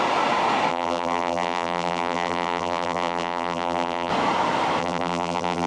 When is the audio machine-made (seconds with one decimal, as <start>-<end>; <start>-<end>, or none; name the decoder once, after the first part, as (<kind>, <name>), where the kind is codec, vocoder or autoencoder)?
0.7-4.1 (vocoder, BigVGAN v2); 4.8-5.7